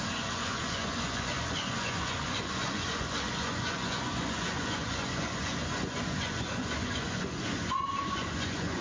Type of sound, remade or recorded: remade